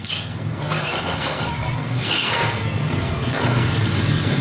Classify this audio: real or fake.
fake